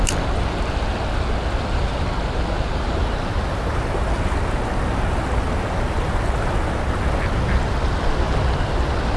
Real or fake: real